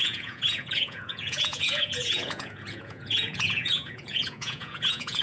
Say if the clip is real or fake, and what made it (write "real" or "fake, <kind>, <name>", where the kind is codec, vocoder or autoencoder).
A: fake, vocoder, Vocos